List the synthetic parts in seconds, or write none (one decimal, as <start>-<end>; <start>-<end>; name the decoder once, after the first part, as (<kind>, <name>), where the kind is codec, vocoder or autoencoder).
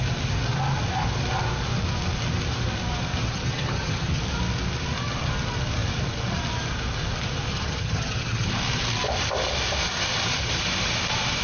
3.2-4.2 (vocoder, HiFi-GAN); 7.5-8.5